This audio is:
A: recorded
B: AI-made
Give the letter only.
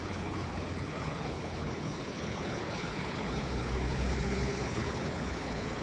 B